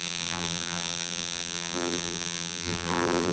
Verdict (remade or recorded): remade